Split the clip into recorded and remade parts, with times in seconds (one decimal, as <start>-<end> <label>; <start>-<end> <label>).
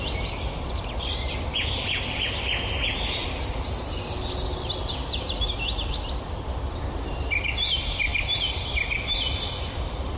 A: 0.0-8.1 recorded; 8.1-10.2 remade